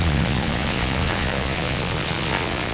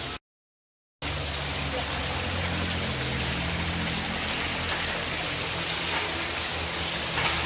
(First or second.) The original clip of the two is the second